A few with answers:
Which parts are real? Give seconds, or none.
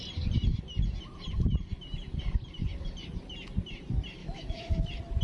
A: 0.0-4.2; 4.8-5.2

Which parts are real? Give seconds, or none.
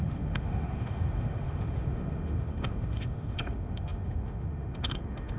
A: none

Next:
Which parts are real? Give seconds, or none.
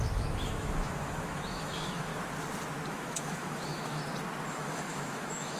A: 2.1-2.9; 4.0-4.5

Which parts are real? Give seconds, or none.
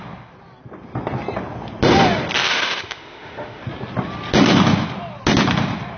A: 0.0-2.5; 3.6-6.0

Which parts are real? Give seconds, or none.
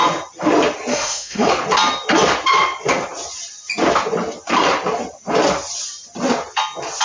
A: 0.0-0.9; 1.5-7.0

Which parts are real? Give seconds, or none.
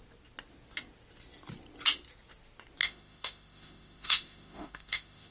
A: 0.0-2.8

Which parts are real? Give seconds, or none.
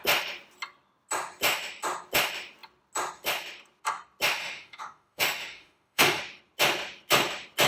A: 0.0-4.4; 6.2-7.7